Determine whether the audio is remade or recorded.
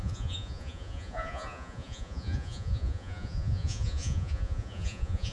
remade